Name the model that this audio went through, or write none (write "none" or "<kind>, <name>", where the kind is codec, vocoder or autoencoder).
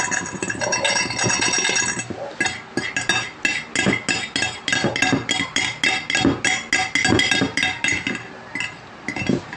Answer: none